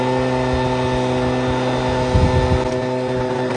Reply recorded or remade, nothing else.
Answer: recorded